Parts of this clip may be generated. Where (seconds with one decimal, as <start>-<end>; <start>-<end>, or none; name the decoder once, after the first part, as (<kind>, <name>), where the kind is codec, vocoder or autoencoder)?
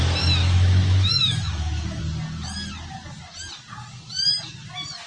0.4-2.0 (autoencoder, DAC-VAE)